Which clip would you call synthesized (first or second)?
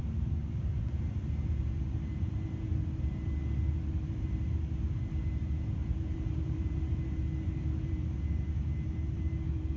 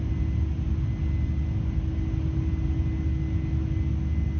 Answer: first